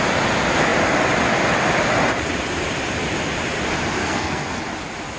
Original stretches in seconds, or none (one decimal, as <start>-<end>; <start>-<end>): 0.0-4.0; 4.6-5.2